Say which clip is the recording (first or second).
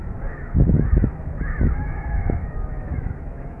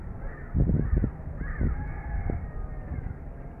second